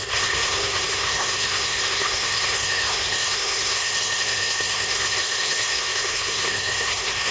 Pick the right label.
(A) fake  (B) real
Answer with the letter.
A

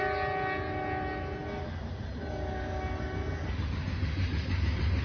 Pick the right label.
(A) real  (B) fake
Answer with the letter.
A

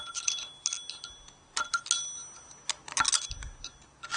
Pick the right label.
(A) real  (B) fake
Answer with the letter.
A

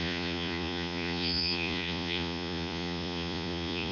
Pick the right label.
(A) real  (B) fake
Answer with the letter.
B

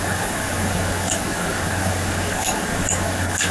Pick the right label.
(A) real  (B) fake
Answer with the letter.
B